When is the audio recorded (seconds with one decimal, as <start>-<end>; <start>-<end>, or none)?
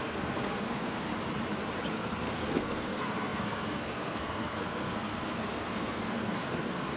1.1-1.9